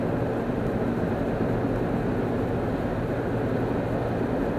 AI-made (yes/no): no